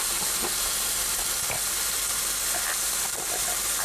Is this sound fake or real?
real